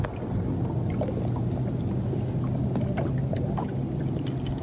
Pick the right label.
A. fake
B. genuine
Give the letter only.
B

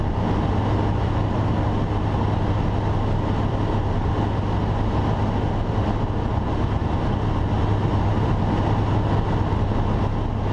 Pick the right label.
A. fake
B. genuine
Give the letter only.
B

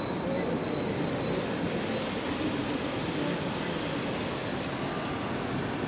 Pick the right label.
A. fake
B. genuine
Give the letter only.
B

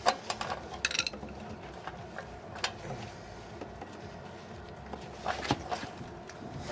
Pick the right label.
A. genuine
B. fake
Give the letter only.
A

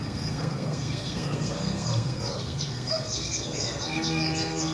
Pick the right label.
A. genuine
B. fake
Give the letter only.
B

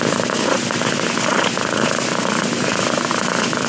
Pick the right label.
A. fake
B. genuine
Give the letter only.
B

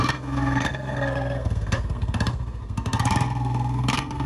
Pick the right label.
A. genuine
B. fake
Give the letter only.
B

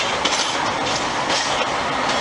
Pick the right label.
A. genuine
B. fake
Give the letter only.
A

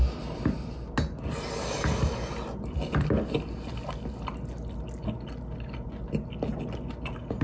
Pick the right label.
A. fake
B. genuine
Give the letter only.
B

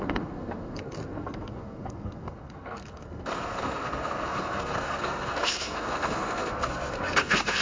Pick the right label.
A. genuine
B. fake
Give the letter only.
B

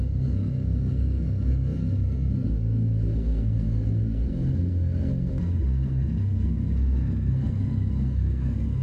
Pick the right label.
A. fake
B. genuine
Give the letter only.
A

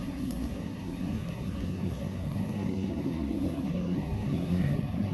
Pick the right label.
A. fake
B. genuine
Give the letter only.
A